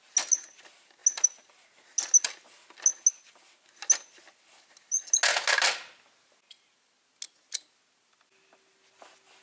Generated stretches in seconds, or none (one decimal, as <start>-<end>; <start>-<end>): none